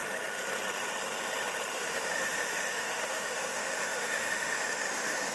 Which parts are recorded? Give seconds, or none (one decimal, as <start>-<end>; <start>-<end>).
0.0-1.7